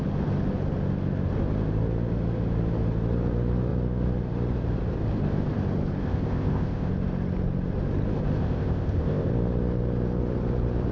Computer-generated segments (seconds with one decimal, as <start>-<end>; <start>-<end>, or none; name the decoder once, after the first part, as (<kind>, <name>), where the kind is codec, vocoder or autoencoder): 6.0-6.9 (codec, ZipCodec); 8.4-9.3